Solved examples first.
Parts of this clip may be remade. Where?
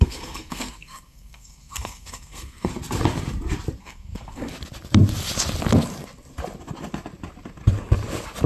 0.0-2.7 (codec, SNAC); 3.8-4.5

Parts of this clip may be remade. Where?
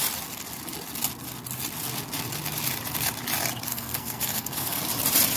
3.7-4.8 (codec, SNAC)